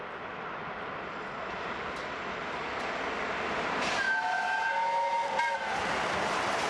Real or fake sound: real